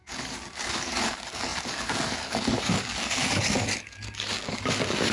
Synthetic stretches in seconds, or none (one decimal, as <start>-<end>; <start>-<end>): 0.0-5.1